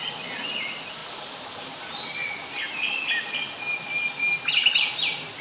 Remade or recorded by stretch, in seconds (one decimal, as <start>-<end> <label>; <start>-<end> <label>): 0.0-5.4 recorded